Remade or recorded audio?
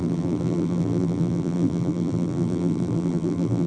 remade